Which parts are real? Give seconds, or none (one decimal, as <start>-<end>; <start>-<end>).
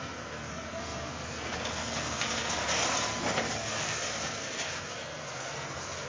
2.6-3.5